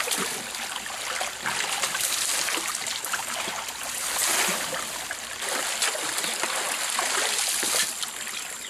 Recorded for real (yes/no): yes